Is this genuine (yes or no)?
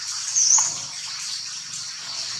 yes